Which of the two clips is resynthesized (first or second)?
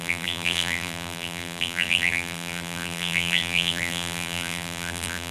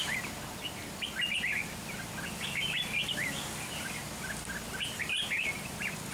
first